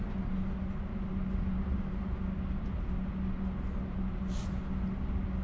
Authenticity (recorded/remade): recorded